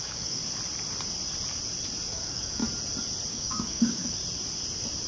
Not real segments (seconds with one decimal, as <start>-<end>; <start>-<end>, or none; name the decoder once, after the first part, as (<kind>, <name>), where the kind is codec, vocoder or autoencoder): 0.0-0.4 (codec, DAC); 2.1-2.6; 3.3-4.2